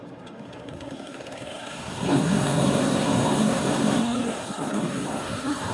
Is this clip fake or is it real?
fake